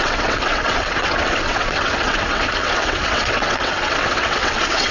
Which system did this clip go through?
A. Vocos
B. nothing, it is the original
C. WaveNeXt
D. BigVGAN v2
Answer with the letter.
C